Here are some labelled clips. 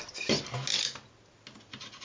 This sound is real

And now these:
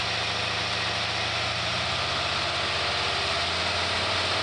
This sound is real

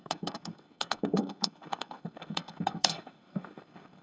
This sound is fake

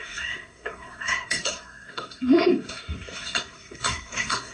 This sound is fake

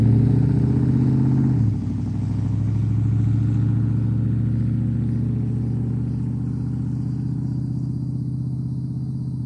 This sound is real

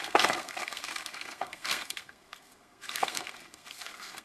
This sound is fake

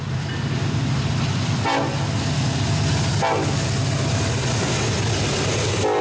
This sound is real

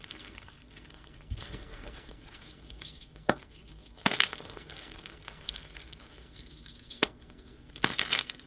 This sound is fake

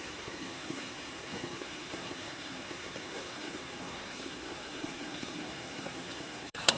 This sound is fake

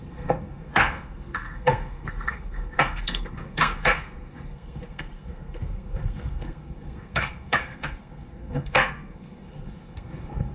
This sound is fake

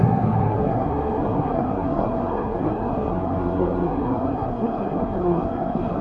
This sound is fake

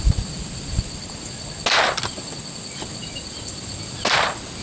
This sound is real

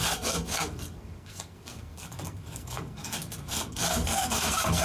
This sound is fake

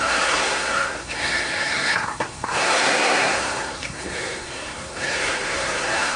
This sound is fake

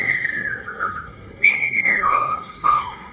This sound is fake